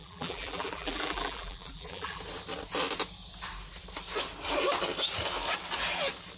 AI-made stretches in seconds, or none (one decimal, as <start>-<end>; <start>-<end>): 0.0-2.2